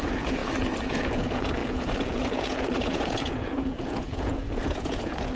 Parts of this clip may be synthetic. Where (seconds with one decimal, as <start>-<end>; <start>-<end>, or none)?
0.0-0.4; 0.9-5.4